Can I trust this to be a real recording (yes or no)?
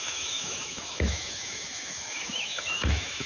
no